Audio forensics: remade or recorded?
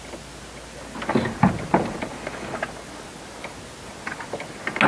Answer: recorded